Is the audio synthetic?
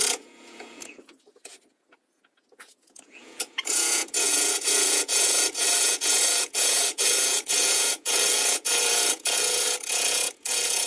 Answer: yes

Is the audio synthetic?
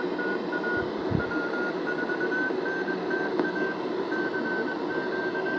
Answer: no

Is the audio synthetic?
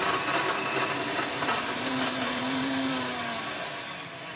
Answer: yes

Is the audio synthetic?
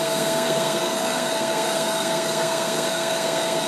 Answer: yes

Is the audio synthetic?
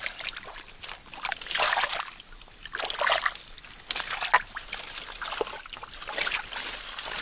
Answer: no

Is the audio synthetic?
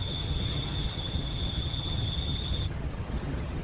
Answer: yes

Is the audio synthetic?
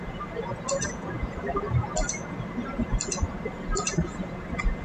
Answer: no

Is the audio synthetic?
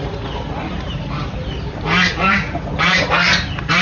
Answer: yes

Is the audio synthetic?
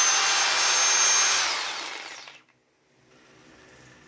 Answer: no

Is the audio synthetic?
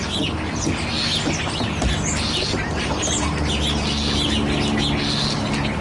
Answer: no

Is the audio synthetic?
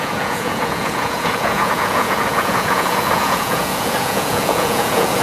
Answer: yes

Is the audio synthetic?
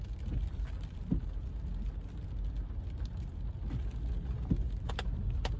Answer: no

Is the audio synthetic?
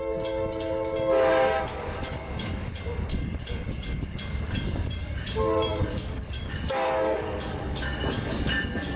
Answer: yes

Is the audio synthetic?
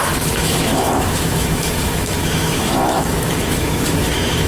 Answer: yes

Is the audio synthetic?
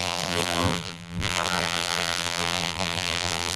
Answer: yes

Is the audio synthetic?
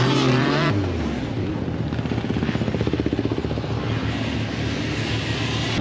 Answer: no